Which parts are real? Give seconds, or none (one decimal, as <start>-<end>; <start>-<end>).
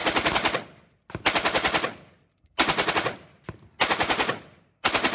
0.0-5.1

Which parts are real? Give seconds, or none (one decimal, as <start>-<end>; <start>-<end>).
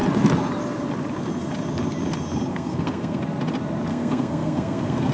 0.0-2.5; 3.2-3.9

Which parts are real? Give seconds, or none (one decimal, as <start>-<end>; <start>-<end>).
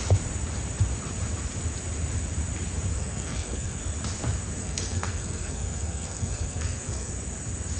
0.0-2.9; 3.8-4.6; 7.1-7.8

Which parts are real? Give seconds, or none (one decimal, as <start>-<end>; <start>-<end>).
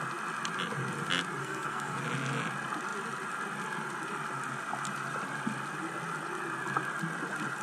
0.0-1.4; 2.0-7.6